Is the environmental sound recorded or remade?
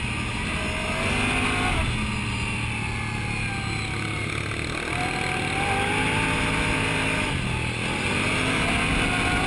recorded